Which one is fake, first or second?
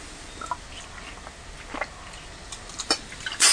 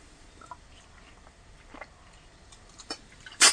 second